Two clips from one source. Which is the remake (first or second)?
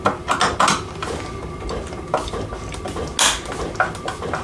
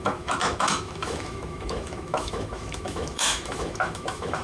second